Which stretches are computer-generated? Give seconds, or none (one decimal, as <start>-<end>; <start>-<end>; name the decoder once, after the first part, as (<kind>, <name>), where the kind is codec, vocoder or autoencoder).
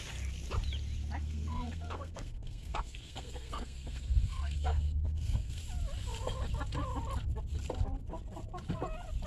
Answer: 1.2-5.6 (codec, SNAC)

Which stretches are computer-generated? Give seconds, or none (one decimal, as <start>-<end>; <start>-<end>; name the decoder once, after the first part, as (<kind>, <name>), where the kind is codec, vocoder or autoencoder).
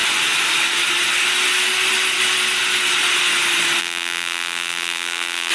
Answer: 3.8-5.5 (vocoder, BigVGAN v2)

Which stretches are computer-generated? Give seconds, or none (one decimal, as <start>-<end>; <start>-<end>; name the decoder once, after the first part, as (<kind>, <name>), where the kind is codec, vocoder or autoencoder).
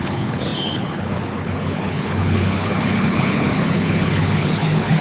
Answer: 0.0-5.0 (codec, HILCodec)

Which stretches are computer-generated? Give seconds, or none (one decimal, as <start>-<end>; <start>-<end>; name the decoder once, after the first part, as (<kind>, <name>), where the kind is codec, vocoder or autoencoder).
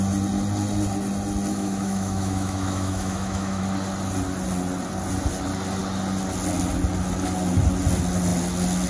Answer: 1.5-3.6 (autoencoder, DAC-VAE)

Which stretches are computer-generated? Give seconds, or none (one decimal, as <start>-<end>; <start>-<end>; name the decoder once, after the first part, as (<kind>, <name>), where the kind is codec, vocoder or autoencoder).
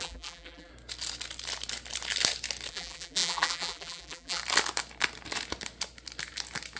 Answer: 0.0-0.7 (vocoder, BigVGAN v2); 2.7-4.4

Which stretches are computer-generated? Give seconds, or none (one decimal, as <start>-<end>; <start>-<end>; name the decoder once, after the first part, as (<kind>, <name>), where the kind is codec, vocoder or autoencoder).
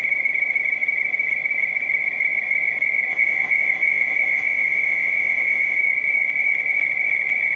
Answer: 3.1-5.8 (codec, ZipCodec)